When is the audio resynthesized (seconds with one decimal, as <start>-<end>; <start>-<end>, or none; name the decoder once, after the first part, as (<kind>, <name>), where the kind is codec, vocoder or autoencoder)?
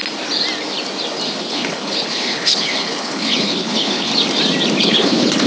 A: 1.4-4.1 (codec, HILCodec); 4.8-5.5